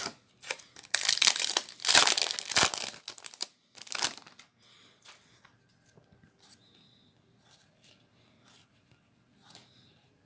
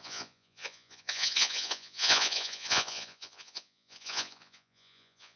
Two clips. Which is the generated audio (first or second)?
second